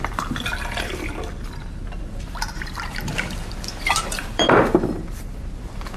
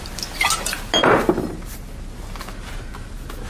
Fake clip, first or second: first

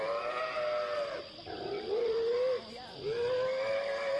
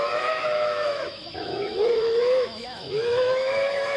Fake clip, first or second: second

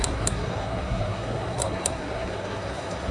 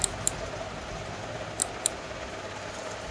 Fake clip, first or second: first